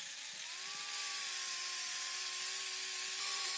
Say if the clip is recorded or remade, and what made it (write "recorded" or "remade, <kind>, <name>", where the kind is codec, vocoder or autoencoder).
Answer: recorded